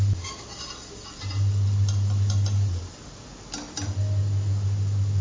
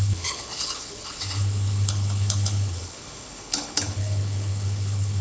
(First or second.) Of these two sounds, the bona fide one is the first